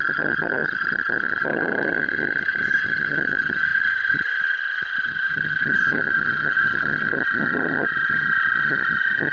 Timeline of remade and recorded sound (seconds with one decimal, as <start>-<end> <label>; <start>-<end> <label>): 0.0-9.3 remade